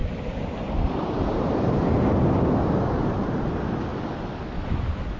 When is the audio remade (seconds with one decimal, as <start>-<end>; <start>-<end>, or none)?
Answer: 0.0-2.1